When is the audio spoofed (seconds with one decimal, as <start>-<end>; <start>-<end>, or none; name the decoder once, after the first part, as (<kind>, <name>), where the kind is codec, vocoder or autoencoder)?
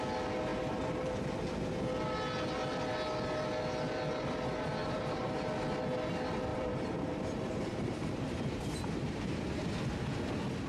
0.5-1.2 (vocoder, BigVGAN v2); 4.8-5.5; 6.5-9.7